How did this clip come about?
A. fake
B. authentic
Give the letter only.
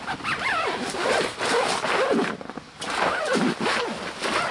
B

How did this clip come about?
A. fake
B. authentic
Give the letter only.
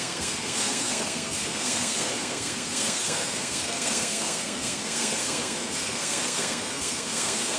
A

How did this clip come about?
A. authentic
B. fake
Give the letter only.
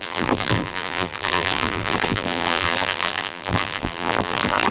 B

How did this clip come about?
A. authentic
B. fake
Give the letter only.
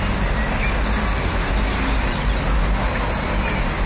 A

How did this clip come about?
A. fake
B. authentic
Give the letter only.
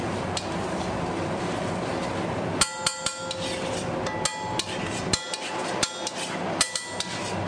B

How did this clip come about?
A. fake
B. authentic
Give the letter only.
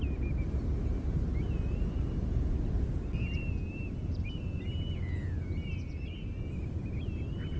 B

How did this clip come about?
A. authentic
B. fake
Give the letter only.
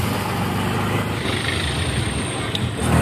A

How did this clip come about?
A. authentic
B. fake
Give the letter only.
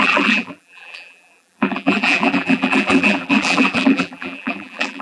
B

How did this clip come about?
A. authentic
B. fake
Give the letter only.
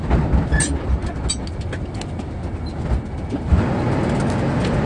A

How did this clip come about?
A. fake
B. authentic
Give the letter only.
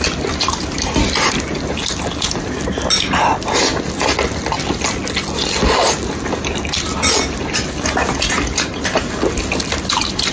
B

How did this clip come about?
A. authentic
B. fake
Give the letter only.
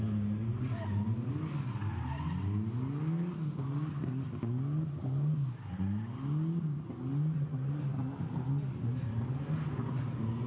A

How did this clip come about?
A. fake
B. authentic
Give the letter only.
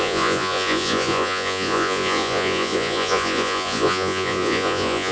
A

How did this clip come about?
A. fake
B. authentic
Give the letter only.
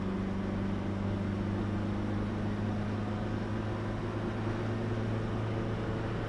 B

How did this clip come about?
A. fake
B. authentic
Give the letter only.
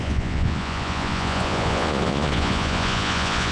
A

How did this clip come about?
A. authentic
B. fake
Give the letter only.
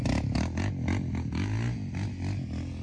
A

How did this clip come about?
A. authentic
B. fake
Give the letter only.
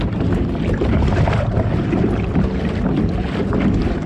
A